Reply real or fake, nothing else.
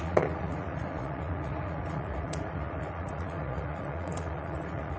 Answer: fake